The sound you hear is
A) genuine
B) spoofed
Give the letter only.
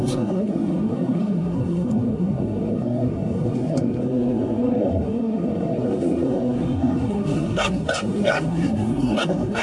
B